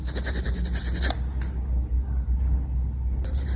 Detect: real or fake real